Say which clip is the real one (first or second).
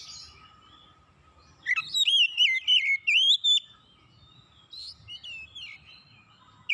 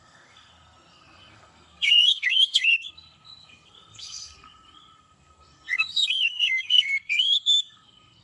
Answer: first